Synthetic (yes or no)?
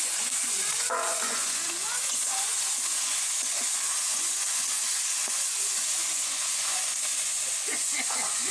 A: yes